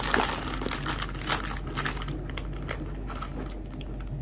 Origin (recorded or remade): recorded